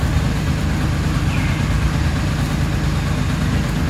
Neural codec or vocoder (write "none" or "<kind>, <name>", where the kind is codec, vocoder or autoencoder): none